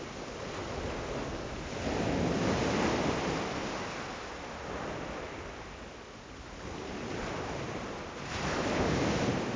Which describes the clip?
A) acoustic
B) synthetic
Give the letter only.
A